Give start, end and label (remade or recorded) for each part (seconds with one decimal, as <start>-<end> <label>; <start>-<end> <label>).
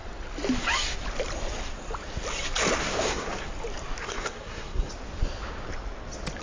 0.0-2.8 recorded; 2.8-3.5 remade; 3.5-4.0 recorded; 4.0-4.9 remade; 4.9-6.4 recorded